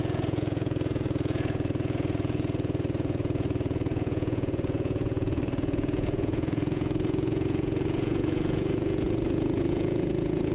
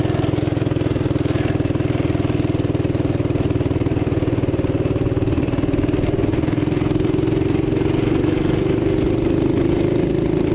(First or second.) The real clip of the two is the second